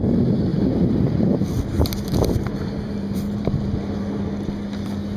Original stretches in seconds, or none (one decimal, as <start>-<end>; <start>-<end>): 0.0-0.5; 1.1-1.7; 3.6-5.2